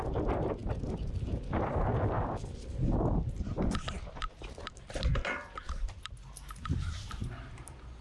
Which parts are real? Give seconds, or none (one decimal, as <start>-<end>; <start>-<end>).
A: 0.0-5.1; 6.0-8.0

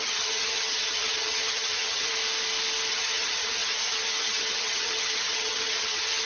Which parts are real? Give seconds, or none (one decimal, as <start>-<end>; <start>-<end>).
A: 2.2-2.9